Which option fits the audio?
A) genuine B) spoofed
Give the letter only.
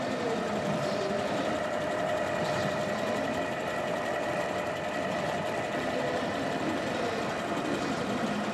B